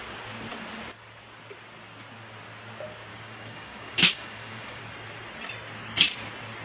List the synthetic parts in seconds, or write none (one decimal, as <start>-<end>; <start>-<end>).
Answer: 3.1-4.8